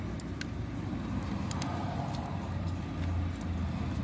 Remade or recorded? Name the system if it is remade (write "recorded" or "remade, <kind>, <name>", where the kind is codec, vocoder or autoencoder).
recorded